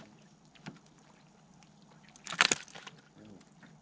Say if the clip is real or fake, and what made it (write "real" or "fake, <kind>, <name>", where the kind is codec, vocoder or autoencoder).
real